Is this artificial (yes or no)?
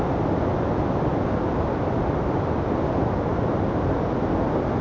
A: no